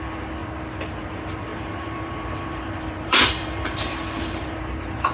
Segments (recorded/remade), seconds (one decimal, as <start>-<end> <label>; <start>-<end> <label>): 0.0-1.5 recorded; 1.5-4.6 remade; 4.6-5.1 recorded